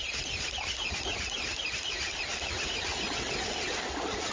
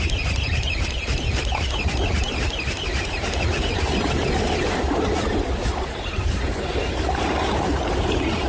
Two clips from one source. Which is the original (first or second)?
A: first